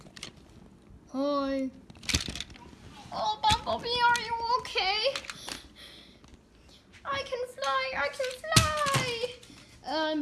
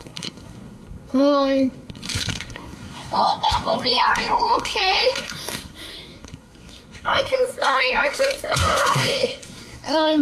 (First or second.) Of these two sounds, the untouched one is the first